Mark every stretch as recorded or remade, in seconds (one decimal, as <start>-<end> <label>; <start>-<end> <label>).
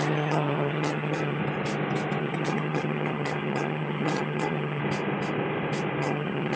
0.0-1.4 remade; 1.4-2.2 recorded; 2.2-4.8 remade; 4.8-6.0 recorded; 6.0-6.6 remade